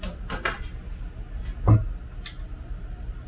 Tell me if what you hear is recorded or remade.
recorded